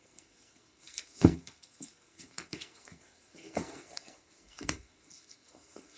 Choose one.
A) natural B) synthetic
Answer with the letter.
B